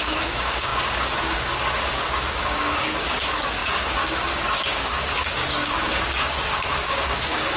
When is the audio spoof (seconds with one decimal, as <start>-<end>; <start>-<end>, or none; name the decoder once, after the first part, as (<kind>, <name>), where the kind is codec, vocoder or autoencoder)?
0.0-7.6 (codec, DAC)